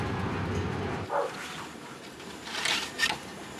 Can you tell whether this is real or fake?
real